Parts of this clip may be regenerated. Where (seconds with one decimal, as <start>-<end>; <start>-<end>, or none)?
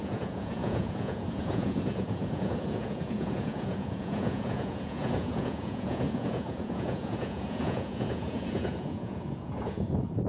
0.0-10.3